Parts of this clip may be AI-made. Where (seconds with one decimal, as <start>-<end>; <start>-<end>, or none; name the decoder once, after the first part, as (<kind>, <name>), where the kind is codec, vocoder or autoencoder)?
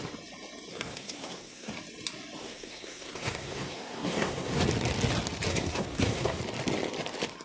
0.7-1.7 (codec, SNAC); 2.4-4.6; 5.5-6.4